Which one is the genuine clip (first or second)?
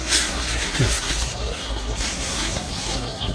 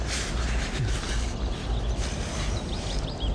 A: second